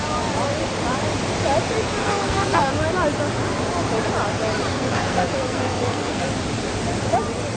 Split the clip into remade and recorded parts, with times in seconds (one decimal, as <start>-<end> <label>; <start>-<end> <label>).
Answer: 0.0-2.0 recorded; 2.0-2.7 remade; 2.7-4.7 recorded; 4.7-6.2 remade; 6.2-7.6 recorded